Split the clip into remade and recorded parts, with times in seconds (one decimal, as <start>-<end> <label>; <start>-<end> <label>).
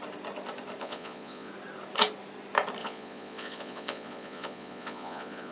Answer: 0.0-0.8 recorded; 0.8-1.5 remade; 1.5-2.8 recorded; 2.8-5.5 remade